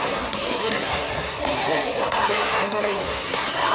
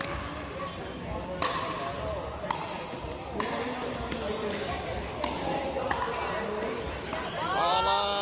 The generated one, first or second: first